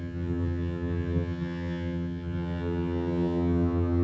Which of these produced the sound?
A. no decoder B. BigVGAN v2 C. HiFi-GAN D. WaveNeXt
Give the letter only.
C